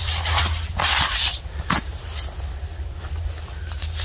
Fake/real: fake